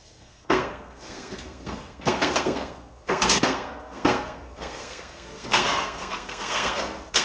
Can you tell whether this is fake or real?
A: fake